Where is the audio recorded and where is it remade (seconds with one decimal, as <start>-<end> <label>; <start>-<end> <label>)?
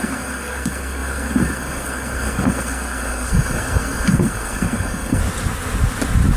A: 0.0-5.2 remade; 5.2-6.4 recorded